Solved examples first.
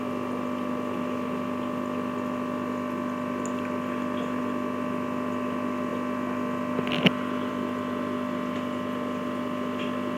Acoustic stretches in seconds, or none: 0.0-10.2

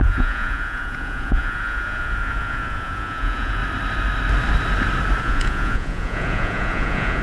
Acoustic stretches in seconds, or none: 3.6-5.2

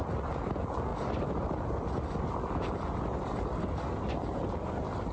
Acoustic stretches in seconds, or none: 0.0-5.1

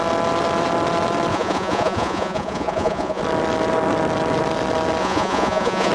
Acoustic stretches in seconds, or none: 0.0-1.3; 3.2-5.0

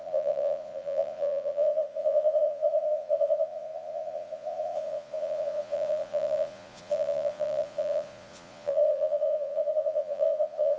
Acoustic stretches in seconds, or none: none